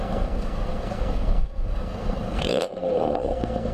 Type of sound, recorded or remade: remade